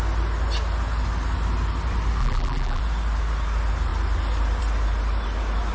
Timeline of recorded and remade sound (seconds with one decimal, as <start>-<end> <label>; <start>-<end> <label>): 0.0-2.2 recorded; 2.2-2.8 remade; 2.8-5.7 recorded